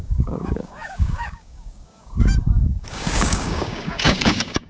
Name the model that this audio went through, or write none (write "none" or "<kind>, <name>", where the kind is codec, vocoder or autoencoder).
codec, DAC